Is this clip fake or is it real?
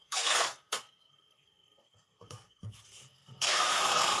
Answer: fake